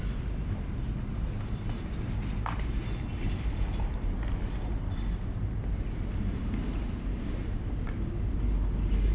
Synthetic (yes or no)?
no